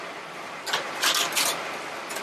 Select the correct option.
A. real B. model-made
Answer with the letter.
B